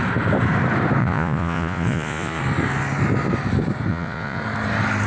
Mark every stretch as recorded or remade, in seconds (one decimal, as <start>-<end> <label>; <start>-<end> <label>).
0.0-1.0 recorded; 1.0-2.4 remade; 2.4-3.9 recorded; 3.9-4.4 remade; 4.4-5.1 recorded